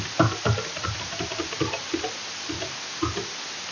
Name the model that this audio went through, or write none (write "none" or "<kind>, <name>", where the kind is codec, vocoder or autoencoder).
none